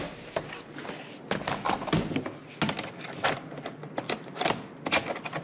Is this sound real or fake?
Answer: real